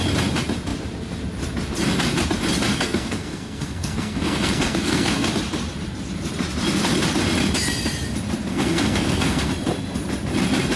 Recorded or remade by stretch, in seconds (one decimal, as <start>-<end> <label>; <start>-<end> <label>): 0.0-2.7 recorded; 2.7-5.3 remade; 5.3-8.5 recorded; 8.5-9.5 remade; 9.5-10.8 recorded